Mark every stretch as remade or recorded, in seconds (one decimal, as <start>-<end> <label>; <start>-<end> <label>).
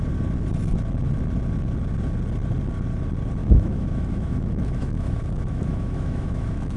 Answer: 0.0-3.4 recorded; 3.4-6.8 remade